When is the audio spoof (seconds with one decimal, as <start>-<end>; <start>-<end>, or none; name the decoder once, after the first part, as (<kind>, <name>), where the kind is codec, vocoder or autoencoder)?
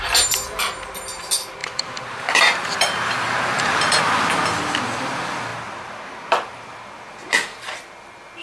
1.6-4.0 (vocoder, BigVGAN v2)